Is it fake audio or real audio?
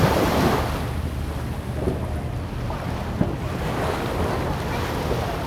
real